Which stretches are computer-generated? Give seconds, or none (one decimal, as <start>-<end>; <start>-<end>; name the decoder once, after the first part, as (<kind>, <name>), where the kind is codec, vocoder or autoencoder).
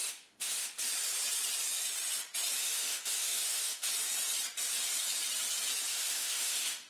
0.0-0.8 (autoencoder, DAC-VAE); 2.6-3.9; 5.9-6.9